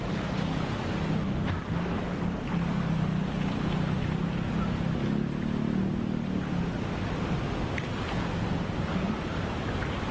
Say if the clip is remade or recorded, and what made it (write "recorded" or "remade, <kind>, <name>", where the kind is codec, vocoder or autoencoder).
recorded